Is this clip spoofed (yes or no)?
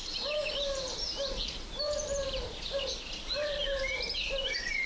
yes